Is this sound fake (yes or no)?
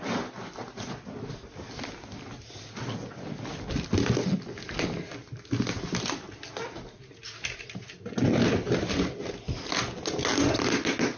no